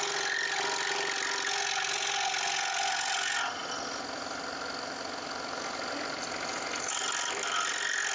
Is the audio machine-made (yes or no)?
no